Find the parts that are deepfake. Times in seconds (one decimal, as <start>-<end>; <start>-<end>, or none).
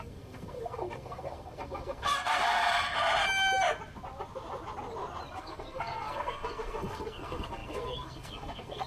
0.0-2.6; 5.4-8.9